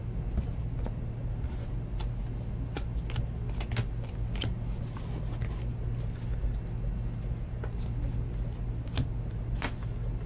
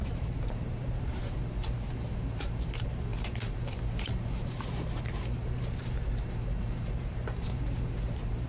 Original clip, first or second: first